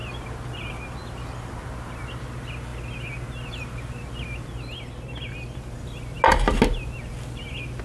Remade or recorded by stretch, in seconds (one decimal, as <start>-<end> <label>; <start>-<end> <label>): 0.0-7.8 recorded

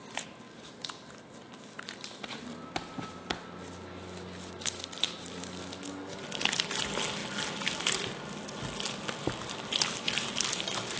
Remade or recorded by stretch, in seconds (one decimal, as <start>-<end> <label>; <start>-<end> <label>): 0.0-11.0 recorded

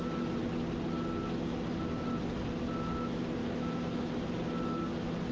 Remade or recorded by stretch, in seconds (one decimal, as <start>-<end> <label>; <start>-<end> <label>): 0.0-3.4 recorded; 3.4-4.1 remade; 4.1-5.3 recorded

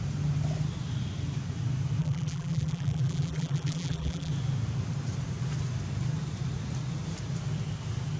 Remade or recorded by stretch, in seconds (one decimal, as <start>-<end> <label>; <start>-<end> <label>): 0.0-2.0 recorded; 2.0-4.3 remade; 4.3-8.2 recorded